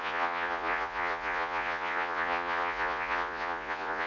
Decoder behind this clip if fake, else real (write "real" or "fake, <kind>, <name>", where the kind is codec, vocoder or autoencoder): fake, vocoder, Vocos